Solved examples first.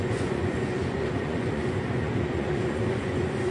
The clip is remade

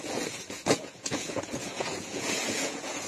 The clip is remade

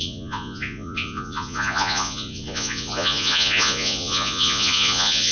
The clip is remade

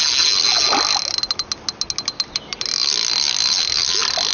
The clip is recorded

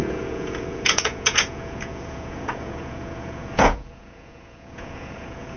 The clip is remade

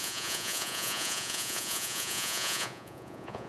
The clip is remade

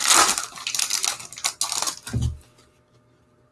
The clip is recorded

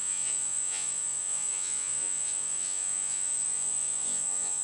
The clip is remade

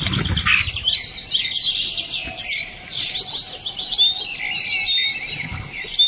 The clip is recorded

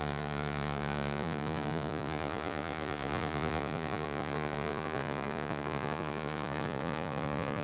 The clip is remade